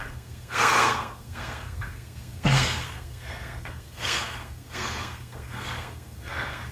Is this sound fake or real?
fake